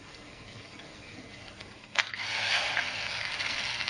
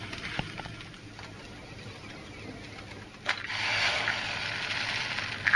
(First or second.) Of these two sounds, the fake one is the first